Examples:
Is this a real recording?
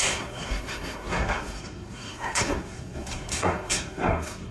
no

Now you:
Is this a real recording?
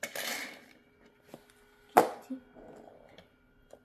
yes